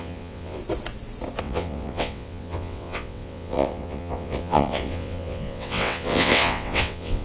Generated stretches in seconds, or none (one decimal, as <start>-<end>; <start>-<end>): 0.0-0.6; 1.4-7.2